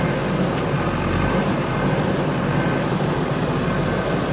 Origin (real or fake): real